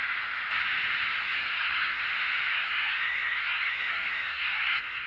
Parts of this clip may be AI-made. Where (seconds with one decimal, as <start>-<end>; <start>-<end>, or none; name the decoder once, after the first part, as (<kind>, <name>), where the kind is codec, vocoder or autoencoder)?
1.2-2.0 (codec, SNAC); 2.5-5.1